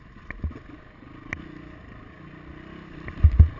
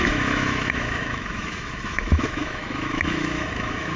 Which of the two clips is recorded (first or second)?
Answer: first